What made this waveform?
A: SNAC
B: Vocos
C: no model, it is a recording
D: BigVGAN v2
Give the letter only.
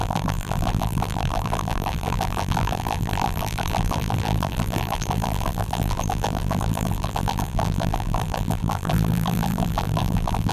D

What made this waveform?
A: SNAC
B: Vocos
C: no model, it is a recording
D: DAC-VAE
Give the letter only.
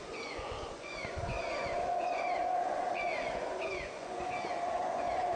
B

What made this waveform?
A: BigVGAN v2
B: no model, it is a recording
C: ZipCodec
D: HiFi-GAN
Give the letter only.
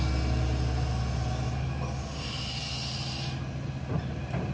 B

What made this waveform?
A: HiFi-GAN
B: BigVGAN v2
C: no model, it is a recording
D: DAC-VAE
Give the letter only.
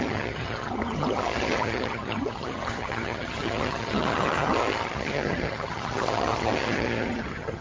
A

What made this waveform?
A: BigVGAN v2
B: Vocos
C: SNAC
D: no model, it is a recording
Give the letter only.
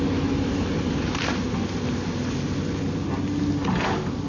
D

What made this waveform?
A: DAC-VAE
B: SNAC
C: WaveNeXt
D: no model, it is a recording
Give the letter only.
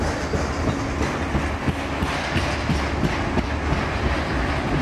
D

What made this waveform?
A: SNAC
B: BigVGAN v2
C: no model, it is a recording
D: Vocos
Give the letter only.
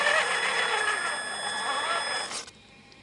C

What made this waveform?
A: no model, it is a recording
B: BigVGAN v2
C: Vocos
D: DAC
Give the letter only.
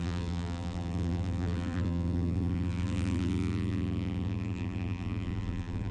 B